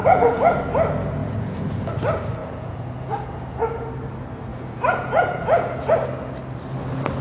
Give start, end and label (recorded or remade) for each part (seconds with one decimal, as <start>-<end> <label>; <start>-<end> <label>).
0.0-0.6 remade; 0.6-1.2 recorded; 1.2-1.9 remade; 1.9-2.4 recorded; 2.4-3.9 remade; 3.9-4.5 recorded; 4.5-5.9 remade; 5.9-7.2 recorded